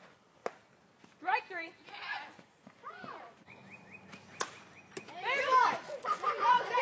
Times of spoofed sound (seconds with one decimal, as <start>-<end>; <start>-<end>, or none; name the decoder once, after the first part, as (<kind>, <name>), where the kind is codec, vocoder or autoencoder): 0.0-0.4 (vocoder, Vocos); 1.4-3.6; 5.6-6.8